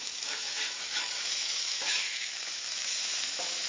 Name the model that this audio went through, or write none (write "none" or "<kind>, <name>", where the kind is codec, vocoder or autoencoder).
autoencoder, DAC-VAE